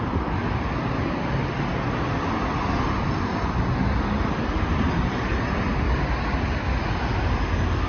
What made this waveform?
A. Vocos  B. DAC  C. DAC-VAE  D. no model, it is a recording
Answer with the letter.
D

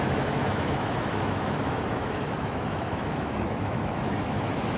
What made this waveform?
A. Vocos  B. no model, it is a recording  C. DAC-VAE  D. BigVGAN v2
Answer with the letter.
C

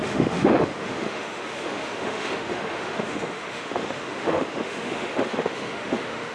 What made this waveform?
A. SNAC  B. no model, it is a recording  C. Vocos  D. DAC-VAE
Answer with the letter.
D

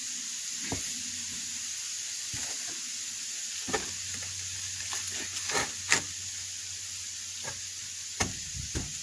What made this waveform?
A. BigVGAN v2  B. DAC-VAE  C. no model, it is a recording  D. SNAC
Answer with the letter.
C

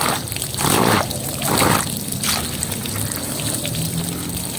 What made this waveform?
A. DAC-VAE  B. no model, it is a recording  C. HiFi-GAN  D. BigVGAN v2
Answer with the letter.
B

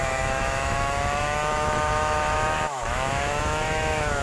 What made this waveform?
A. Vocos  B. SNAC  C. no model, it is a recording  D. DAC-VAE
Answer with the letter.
D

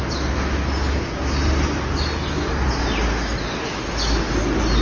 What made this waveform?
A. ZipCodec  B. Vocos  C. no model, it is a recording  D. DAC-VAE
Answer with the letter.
C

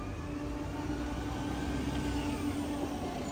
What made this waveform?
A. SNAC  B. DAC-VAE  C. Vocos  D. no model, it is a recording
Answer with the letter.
D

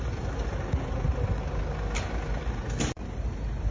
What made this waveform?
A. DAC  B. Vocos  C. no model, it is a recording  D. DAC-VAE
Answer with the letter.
C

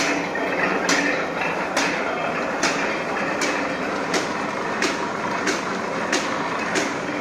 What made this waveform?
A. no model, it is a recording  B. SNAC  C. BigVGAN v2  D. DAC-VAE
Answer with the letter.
A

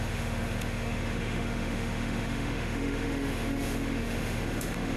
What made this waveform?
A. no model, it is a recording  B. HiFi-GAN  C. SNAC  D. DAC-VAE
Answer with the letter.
D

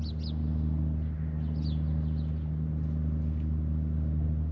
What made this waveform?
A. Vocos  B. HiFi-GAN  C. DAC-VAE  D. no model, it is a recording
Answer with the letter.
D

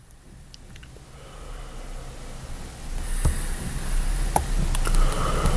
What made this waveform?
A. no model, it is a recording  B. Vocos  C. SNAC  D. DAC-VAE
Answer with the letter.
A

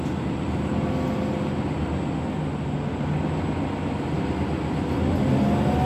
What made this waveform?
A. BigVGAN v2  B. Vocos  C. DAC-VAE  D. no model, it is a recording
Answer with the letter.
D